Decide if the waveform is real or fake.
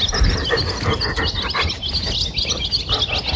real